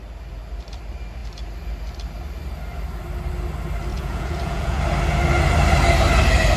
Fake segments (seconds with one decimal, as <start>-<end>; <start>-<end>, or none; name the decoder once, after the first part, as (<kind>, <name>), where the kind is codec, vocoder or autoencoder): 3.9-4.8 (vocoder, Vocos)